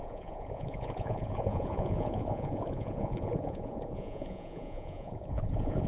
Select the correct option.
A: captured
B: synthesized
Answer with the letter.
B